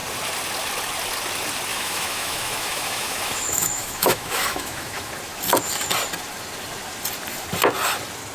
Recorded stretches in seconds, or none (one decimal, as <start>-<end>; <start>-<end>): 0.0-1.7; 5.1-8.3